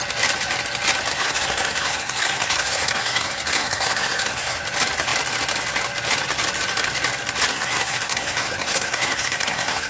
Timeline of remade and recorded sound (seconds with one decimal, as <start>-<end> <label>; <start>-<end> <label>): 0.0-1.1 recorded; 1.1-4.6 remade; 4.6-7.5 recorded; 7.5-9.9 remade